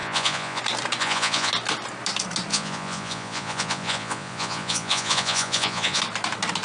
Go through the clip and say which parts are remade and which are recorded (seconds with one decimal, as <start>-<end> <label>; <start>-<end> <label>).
0.0-0.6 remade; 0.6-1.0 recorded; 1.0-1.5 remade; 1.5-2.5 recorded; 2.5-6.0 remade; 6.0-6.6 recorded